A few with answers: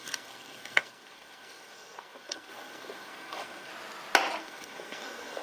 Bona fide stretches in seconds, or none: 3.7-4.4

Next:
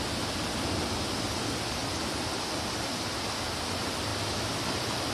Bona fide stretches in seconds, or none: 0.0-1.8; 2.5-4.1

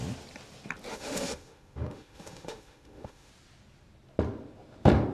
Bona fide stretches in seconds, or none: 0.0-0.9; 3.3-5.1